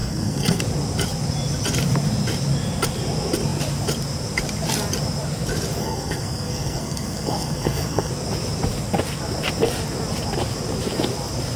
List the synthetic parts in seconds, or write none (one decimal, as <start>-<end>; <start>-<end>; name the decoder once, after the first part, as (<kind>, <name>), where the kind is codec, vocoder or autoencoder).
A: 0.0-0.6 (codec, SNAC); 5.8-8.1